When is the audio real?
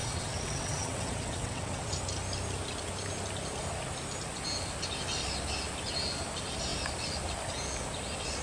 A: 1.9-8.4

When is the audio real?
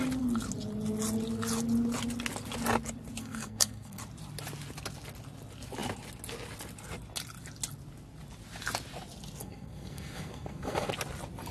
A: 0.0-3.2; 4.0-9.4; 10.9-11.5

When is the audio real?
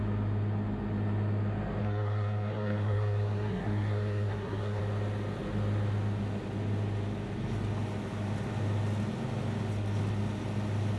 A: 0.0-1.8; 4.8-11.0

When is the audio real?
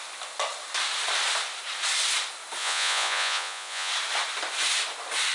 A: 0.0-2.6; 3.9-5.3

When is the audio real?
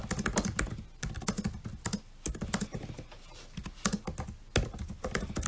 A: 0.0-5.5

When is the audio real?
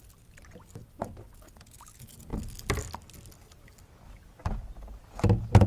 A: 0.0-5.7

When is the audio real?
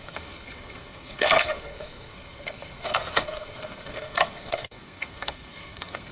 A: none